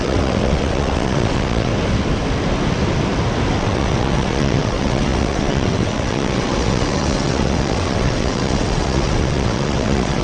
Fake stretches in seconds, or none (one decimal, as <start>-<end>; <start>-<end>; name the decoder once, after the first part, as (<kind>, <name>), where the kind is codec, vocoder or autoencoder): 0.0-1.7 (vocoder, WaveNeXt); 3.6-10.2